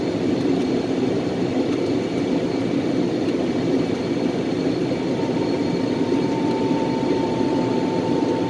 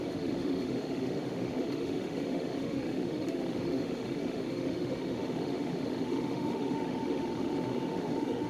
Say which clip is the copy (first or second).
second